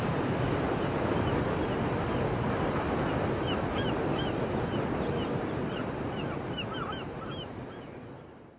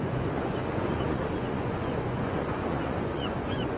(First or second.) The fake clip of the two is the second